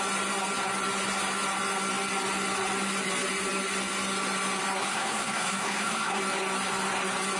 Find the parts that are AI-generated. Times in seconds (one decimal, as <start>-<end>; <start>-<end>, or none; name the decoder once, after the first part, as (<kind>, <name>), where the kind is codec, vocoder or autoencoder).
4.8-6.2 (codec, SNAC)